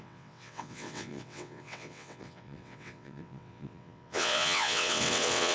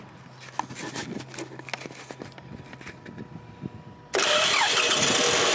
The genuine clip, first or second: second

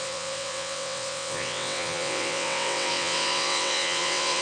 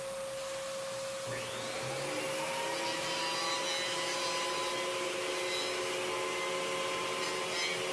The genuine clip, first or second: second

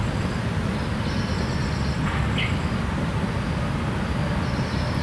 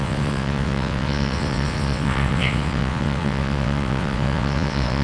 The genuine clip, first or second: first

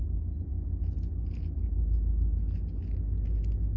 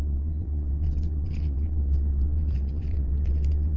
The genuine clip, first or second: first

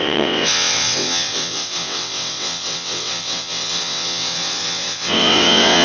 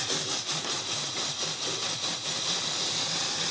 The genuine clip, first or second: second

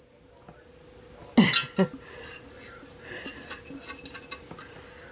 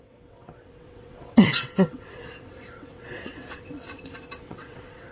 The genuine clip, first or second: first